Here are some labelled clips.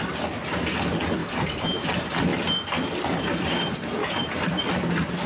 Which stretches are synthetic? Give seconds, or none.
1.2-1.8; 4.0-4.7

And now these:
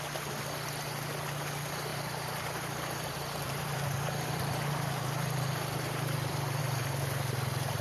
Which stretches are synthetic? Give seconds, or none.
1.9-6.6

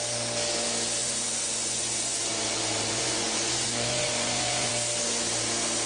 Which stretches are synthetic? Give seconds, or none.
1.0-2.3; 2.8-4.7

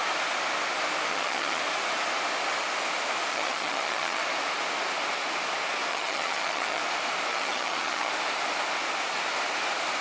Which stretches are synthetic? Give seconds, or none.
1.1-1.6; 3.3-4.2; 5.9-6.8; 7.3-8.1

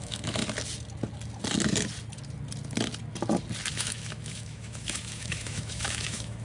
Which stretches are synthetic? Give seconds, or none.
0.0-0.4; 3.7-6.4

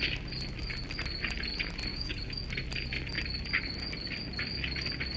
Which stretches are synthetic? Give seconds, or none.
1.9-2.4

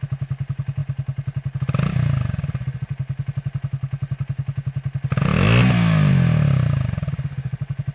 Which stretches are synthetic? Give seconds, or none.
none

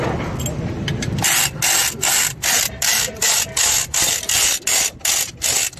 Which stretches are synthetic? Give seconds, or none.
1.8-4.6